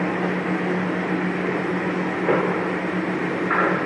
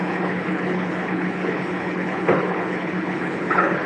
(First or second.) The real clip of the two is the first